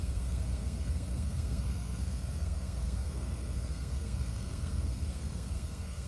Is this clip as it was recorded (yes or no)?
no